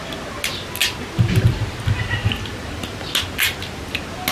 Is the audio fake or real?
real